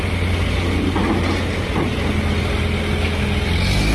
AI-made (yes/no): no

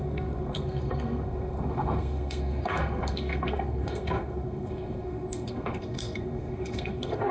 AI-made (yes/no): yes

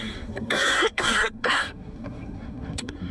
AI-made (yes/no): yes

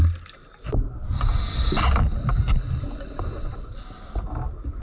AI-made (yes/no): no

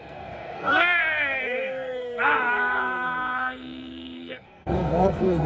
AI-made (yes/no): yes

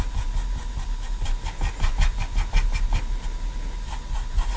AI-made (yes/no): no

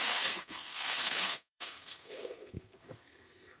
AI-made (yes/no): yes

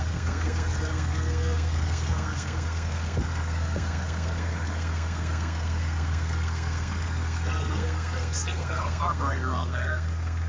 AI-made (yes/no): yes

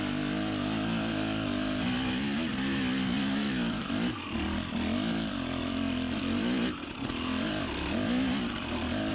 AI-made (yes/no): no